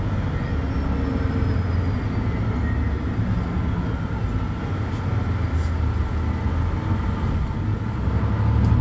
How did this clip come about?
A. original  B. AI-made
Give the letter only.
A